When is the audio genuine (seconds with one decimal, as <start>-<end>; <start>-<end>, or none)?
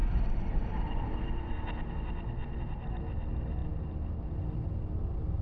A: 1.0-5.4